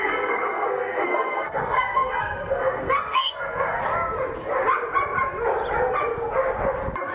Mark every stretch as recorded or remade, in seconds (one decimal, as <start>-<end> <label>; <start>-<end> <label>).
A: 0.0-3.8 remade; 3.8-7.1 recorded